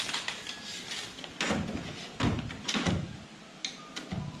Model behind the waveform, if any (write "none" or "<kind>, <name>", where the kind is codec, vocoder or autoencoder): none